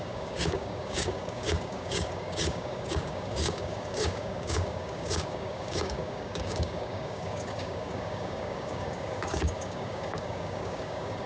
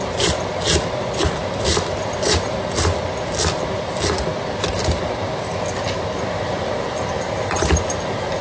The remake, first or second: first